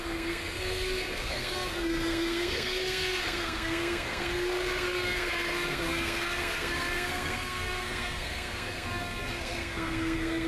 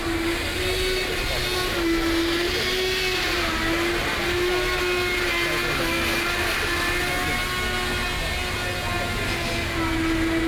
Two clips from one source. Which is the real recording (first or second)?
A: second